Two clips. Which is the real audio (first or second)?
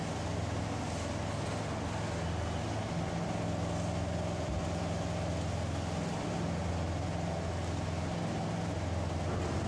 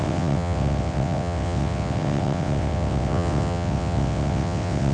first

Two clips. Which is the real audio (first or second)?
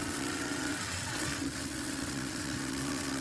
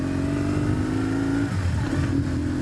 second